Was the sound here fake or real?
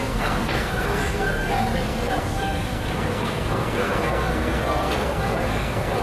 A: fake